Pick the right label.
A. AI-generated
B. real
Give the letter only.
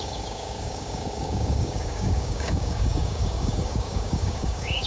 A